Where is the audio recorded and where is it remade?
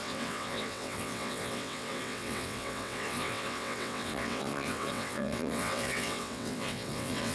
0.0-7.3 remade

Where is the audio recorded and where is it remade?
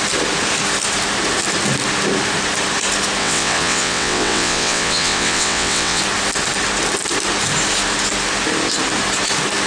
0.0-3.2 recorded; 3.2-6.0 remade; 6.0-9.7 recorded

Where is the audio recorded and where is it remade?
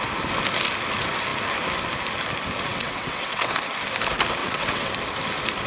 0.0-2.7 recorded; 2.7-3.5 remade; 3.5-4.4 recorded; 4.4-4.9 remade; 4.9-5.7 recorded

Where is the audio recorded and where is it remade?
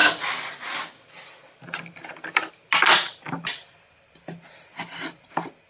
0.0-5.7 recorded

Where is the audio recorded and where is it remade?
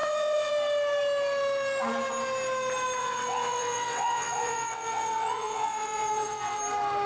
0.0-0.5 remade; 0.5-3.0 recorded; 3.0-6.6 remade; 6.6-7.1 recorded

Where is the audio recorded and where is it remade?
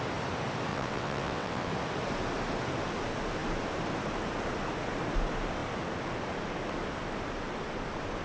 0.0-0.7 recorded; 0.7-1.7 remade; 1.7-8.2 recorded